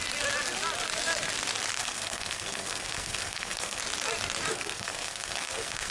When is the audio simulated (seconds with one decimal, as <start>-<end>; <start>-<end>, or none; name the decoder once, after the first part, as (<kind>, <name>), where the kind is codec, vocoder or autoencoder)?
1.8-3.8 (codec, SNAC); 4.5-5.9